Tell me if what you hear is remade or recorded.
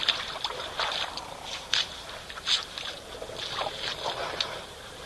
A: remade